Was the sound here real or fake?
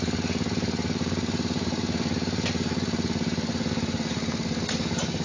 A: fake